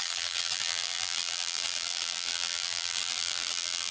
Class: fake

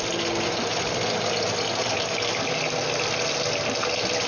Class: real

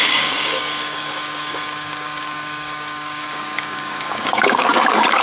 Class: fake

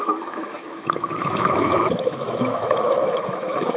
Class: fake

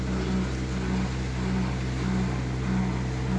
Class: real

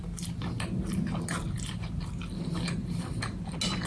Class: real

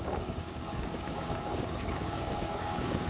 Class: fake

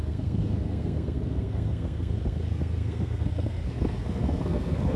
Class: fake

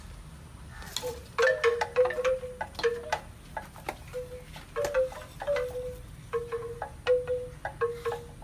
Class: real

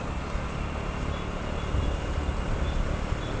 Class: real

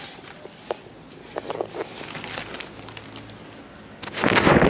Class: real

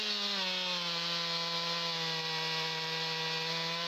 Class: real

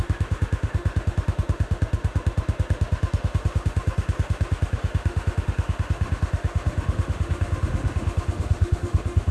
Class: fake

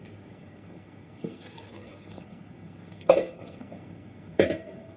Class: fake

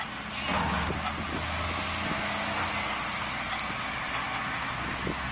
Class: real